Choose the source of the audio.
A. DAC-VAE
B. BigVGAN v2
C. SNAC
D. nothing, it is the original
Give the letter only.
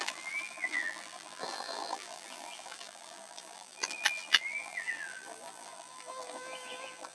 B